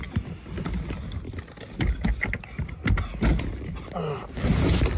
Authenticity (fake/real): real